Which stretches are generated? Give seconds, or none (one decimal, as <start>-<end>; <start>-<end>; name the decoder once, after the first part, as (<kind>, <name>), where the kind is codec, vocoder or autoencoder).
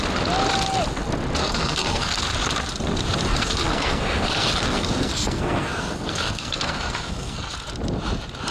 1.4-2.2 (codec, SNAC); 3.3-7.5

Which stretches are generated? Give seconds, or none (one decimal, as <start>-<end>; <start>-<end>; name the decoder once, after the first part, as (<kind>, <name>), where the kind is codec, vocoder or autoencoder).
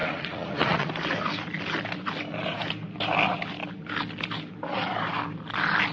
0.0-0.9 (vocoder, Vocos)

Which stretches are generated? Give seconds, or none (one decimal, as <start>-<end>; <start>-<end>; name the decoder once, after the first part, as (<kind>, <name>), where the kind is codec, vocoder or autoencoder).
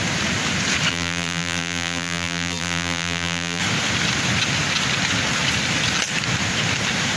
0.9-3.6 (vocoder, BigVGAN v2)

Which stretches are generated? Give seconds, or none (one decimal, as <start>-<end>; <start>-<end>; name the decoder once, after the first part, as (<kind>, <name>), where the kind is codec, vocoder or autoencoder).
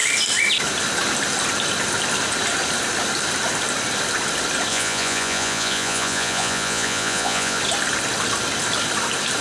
4.7-7.6 (vocoder, Vocos)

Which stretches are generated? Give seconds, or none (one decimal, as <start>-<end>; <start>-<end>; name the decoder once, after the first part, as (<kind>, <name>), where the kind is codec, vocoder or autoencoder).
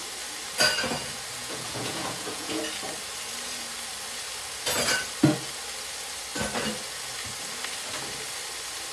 1.4-2.6 (vocoder, Vocos)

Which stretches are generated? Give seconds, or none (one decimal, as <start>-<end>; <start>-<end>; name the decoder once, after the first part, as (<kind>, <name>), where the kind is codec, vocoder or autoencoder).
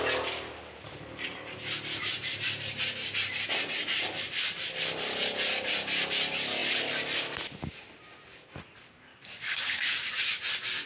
9.1-10.1 (codec, DAC)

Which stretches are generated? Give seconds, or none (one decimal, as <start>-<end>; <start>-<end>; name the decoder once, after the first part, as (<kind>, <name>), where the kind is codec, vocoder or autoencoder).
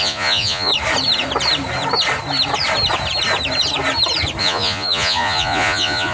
0.0-0.7 (vocoder, Vocos); 4.4-6.1